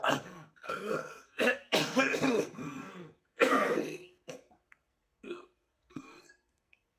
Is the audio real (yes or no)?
no